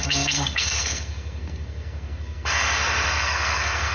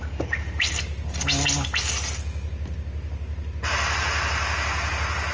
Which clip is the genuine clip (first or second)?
second